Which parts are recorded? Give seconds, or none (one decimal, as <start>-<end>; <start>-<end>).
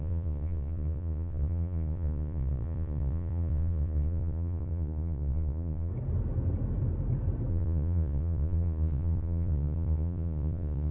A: 5.9-7.5